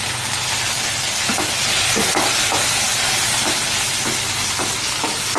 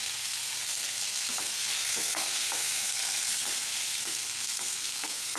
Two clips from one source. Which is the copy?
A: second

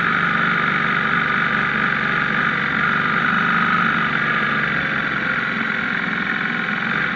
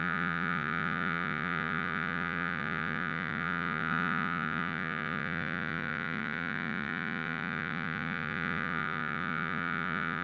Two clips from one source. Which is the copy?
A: second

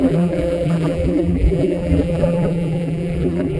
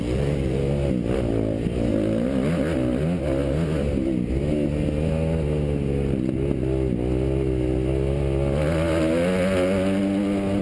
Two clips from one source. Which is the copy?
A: first